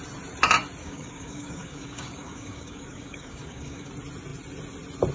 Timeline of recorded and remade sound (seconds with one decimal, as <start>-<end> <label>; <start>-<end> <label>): 0.0-0.8 recorded; 0.8-3.9 remade; 3.9-5.1 recorded